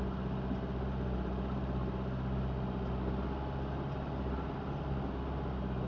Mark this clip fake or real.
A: real